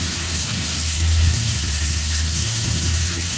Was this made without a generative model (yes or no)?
no